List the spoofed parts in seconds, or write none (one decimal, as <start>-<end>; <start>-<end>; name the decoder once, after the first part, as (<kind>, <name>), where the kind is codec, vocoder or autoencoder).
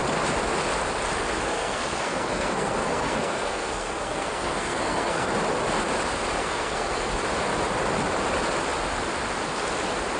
1.5-5.3 (codec, SNAC); 6.4-7.1